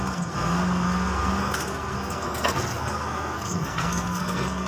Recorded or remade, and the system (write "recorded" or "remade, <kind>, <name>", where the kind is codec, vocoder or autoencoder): remade, codec, SNAC